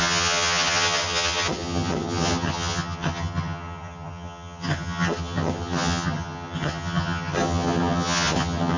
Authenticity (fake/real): fake